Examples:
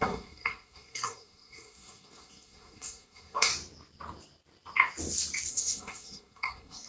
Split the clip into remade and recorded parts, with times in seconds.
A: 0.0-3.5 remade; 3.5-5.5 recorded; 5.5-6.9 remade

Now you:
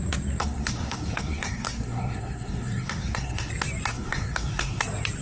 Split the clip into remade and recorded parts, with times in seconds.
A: 0.0-0.4 recorded; 0.4-3.5 remade; 3.5-3.9 recorded; 3.9-4.8 remade; 4.8-5.2 recorded

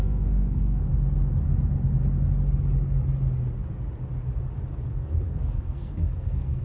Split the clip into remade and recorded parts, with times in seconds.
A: 0.0-0.9 remade; 0.9-4.9 recorded; 4.9-6.6 remade

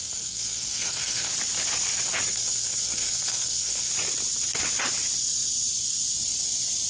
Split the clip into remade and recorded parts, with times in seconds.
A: 0.0-1.3 remade; 1.3-2.3 recorded; 2.3-3.9 remade; 3.9-6.9 recorded

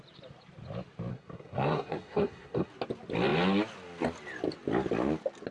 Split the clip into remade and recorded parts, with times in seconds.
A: 0.0-1.1 recorded; 1.1-2.7 remade; 2.7-5.5 recorded

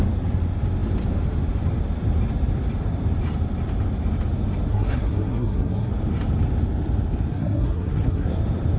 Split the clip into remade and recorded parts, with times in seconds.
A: 0.0-4.7 recorded; 4.7-5.9 remade; 5.9-7.3 recorded; 7.3-8.4 remade; 8.4-8.8 recorded